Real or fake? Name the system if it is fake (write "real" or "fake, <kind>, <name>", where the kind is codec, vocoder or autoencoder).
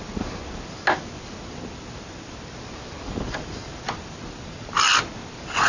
real